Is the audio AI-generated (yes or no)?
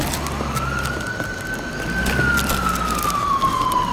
no